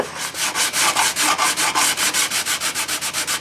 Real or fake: real